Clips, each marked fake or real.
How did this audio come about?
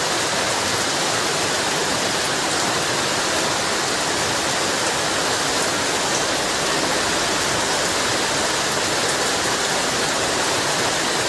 real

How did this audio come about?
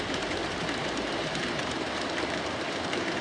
fake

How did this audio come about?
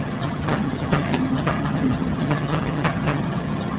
fake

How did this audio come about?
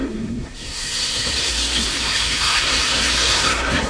fake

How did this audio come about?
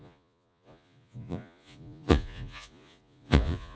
fake